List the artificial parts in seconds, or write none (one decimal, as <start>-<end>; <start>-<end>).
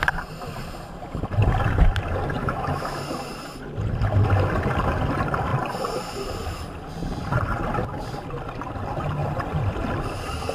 2.4-3.0